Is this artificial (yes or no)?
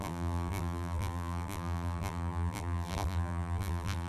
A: yes